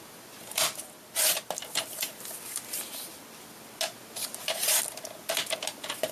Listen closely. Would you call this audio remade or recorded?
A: recorded